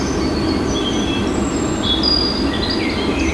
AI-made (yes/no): no